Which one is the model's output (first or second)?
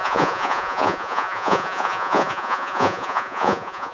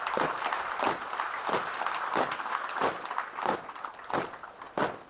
first